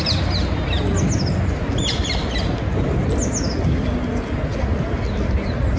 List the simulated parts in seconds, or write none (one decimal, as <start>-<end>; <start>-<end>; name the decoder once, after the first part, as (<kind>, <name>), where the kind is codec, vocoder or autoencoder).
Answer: none

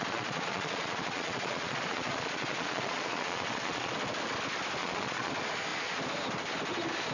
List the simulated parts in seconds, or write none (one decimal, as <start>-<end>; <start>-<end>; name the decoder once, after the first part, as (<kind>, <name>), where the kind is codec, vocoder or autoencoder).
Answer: 0.0-3.9 (vocoder, Vocos); 4.8-5.3

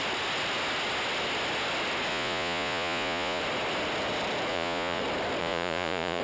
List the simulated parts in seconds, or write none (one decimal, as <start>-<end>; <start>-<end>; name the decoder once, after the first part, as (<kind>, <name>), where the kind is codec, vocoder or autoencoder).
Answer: 2.1-3.4 (vocoder, Vocos); 4.5-5.0; 5.4-6.2

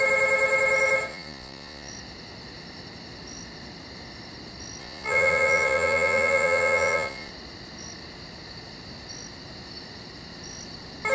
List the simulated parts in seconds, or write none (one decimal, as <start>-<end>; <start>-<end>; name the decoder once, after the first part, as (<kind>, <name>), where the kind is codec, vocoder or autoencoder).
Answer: 1.1-1.9 (vocoder, Vocos); 4.8-7.3